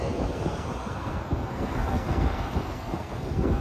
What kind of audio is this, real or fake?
fake